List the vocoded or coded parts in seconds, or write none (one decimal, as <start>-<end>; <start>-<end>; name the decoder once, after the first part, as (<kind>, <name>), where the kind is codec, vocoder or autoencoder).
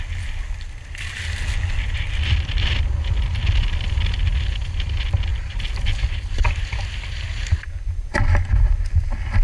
none